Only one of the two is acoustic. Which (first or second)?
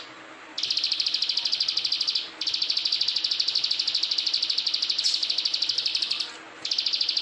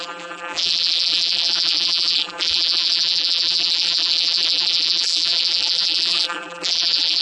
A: first